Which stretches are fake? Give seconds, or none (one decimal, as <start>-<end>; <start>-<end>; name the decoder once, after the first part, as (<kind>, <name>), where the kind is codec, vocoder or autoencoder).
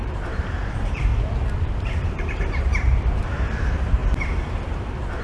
0.0-1.1 (vocoder, BigVGAN v2); 2.1-4.0; 4.7-5.2